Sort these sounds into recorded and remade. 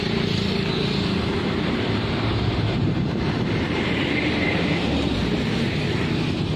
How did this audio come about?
remade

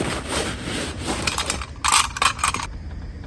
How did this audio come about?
recorded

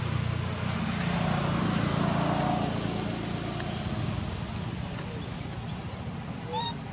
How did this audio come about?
recorded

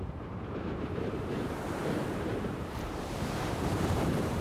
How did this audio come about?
remade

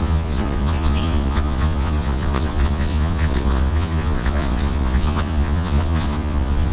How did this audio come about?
remade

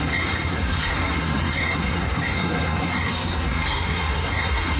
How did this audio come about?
remade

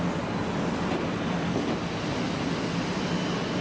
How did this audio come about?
recorded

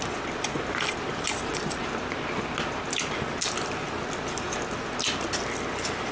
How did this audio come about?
recorded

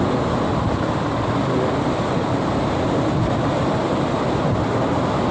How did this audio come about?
recorded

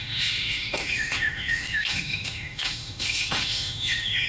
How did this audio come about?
remade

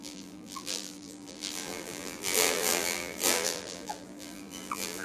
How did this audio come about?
remade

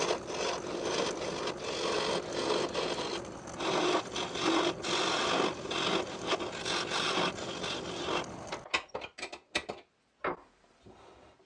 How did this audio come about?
recorded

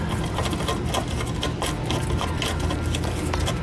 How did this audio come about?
recorded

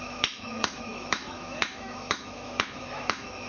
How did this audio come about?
remade